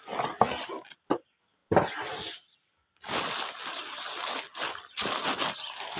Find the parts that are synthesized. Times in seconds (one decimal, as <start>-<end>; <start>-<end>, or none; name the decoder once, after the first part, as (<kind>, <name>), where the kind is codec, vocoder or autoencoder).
none